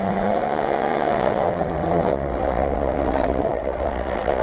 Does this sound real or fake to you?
fake